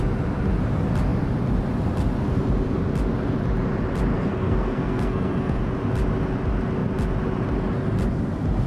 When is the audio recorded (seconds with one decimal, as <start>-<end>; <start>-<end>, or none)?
0.0-4.1; 5.6-8.7